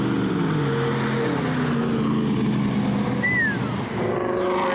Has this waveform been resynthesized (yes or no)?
no